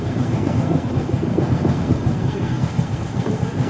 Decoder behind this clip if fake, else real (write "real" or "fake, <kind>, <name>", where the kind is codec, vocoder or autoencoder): fake, codec, SNAC